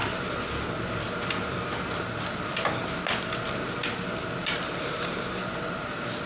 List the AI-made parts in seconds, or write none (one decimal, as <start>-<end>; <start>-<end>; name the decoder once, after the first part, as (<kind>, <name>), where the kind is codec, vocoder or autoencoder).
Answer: none